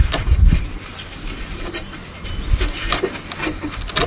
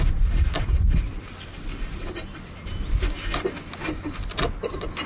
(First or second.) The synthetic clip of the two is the first